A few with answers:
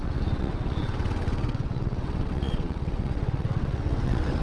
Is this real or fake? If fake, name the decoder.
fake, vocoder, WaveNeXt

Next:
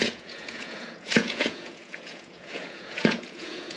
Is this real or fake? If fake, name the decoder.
fake, vocoder, Vocos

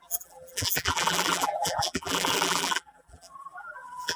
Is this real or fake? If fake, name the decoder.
fake, vocoder, BigVGAN v2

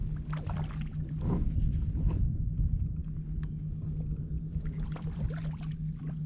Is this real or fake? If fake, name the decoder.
real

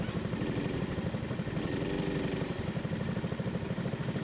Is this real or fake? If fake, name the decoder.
real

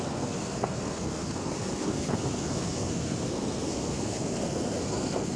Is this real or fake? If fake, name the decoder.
fake, codec, SNAC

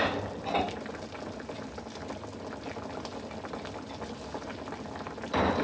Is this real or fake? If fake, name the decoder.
real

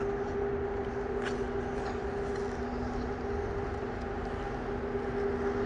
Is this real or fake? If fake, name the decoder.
real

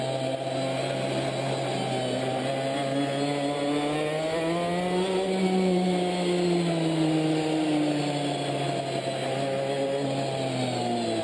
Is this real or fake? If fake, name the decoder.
real